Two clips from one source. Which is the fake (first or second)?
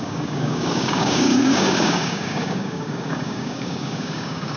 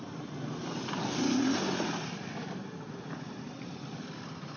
first